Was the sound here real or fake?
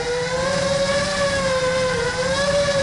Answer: fake